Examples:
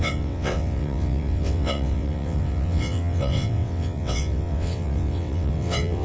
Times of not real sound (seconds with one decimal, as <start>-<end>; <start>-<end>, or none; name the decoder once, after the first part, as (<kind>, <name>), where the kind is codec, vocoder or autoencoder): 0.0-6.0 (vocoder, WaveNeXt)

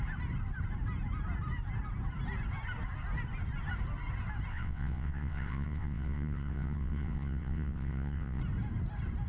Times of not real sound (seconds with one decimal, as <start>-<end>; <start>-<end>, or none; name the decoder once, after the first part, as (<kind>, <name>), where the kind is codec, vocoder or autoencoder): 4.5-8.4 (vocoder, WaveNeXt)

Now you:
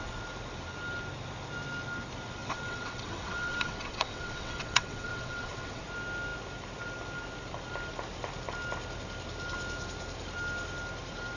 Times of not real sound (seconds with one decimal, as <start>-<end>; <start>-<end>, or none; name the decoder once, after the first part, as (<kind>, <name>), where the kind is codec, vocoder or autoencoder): 2.4-5.8 (vocoder, WaveNeXt)